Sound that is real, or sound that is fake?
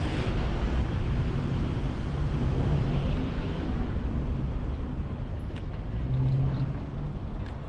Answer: real